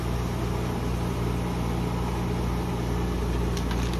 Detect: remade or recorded recorded